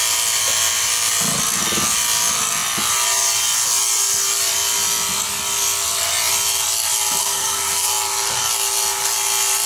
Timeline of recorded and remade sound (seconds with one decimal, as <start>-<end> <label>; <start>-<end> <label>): 0.0-7.2 recorded; 7.2-7.9 remade; 7.9-9.7 recorded